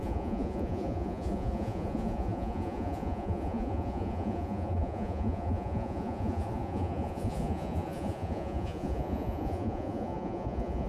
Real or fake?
fake